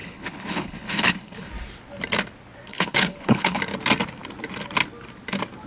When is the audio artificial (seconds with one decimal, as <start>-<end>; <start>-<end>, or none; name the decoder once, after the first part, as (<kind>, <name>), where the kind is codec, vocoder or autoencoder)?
0.0-1.5 (codec, HILCodec); 2.7-3.6